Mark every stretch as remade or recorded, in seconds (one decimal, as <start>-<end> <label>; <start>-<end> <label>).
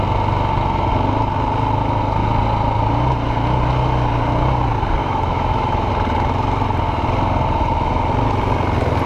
0.0-5.0 recorded; 5.0-5.9 remade; 5.9-9.1 recorded